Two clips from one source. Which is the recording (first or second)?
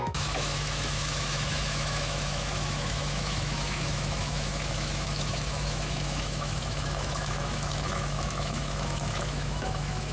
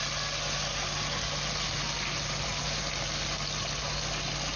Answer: second